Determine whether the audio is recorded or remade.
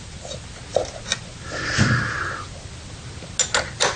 recorded